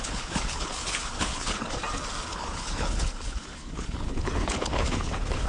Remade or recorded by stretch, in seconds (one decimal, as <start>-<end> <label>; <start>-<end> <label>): 0.0-1.8 remade; 1.8-2.3 recorded; 2.3-5.5 remade